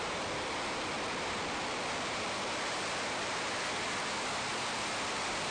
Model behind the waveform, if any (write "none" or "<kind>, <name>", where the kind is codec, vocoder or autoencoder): vocoder, BigVGAN v2